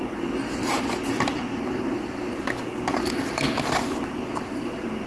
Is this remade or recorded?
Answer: recorded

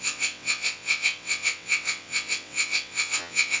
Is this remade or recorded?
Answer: remade